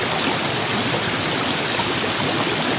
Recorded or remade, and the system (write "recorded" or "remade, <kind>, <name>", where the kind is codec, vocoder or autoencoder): recorded